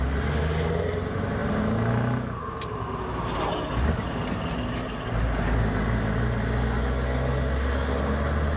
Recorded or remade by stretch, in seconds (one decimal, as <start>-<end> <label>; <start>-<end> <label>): 0.0-8.6 recorded